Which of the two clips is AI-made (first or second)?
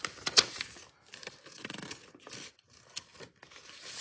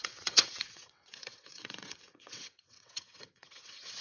second